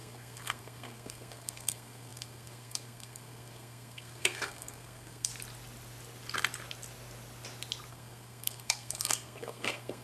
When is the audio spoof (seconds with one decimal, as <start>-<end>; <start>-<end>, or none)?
0.0-5.3; 7.9-10.0